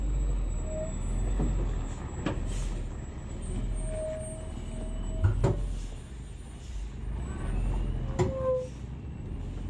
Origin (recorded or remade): recorded